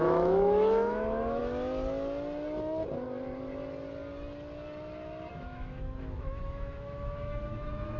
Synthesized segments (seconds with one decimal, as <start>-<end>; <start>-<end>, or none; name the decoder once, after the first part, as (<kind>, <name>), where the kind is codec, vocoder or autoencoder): 0.0-1.4 (autoencoder, DAC-VAE); 5.3-8.0

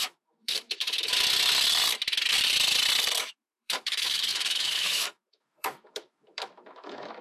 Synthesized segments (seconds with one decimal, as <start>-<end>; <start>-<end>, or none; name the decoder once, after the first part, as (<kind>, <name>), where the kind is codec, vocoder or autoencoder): 0.0-1.1 (autoencoder, DAC-VAE); 3.2-7.2

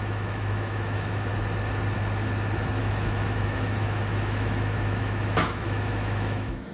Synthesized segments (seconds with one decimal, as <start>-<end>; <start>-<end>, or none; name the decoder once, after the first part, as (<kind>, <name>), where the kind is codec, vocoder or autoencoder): 0.0-1.3 (autoencoder, DAC-VAE); 2.8-6.7

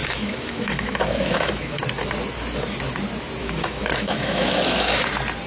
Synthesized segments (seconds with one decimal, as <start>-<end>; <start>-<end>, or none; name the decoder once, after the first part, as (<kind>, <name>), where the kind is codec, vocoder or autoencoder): 0.0-1.8 (autoencoder, DAC-VAE); 3.4-5.1

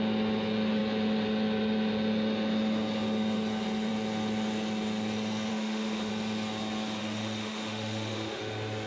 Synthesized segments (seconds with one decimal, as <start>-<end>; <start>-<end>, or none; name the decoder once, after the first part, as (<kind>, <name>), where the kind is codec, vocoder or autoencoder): 5.5-6.1 (autoencoder, DAC-VAE); 7.0-8.4